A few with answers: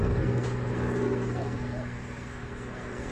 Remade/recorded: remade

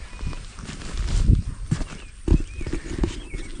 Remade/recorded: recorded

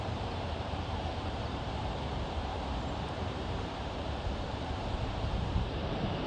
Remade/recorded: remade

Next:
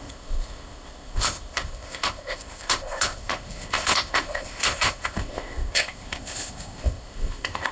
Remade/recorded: remade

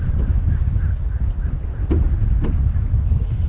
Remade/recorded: recorded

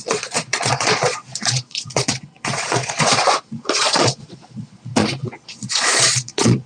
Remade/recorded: remade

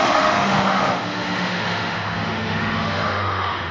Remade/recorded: remade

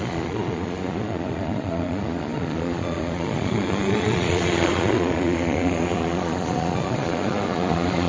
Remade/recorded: remade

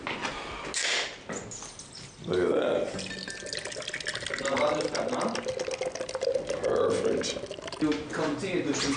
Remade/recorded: recorded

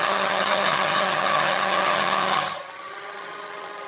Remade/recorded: remade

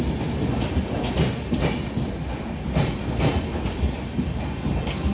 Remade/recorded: recorded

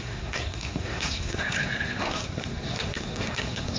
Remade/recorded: remade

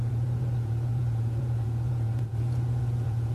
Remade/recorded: remade